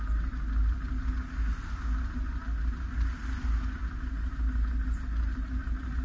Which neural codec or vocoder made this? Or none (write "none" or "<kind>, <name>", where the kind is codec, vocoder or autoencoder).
none